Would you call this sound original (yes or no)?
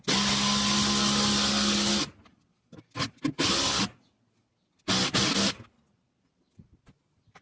yes